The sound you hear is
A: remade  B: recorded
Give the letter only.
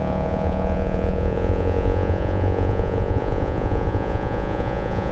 A